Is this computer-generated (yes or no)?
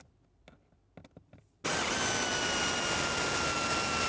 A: no